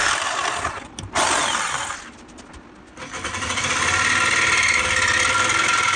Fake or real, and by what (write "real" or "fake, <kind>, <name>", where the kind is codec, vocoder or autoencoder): real